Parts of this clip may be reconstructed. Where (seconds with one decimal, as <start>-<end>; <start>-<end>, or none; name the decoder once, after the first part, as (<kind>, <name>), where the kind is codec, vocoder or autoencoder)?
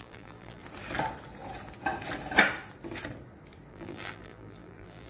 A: 0.0-0.6 (vocoder, BigVGAN v2); 3.7-5.1